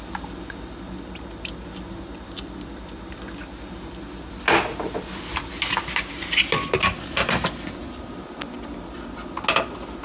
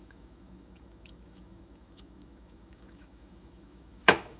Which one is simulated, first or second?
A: second